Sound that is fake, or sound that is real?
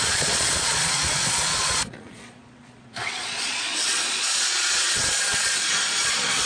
fake